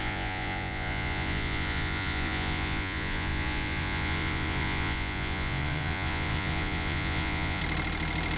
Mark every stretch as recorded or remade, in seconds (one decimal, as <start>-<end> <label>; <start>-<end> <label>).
0.0-7.6 remade; 7.6-8.4 recorded